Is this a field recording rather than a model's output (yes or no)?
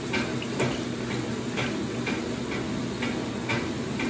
yes